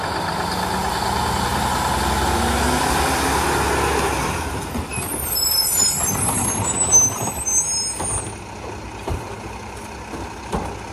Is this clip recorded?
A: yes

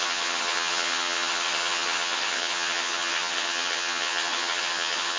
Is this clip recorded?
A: no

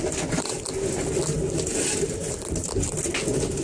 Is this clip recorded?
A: yes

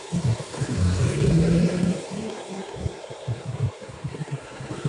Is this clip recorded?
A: no